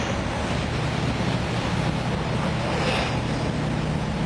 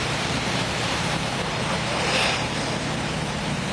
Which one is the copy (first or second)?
second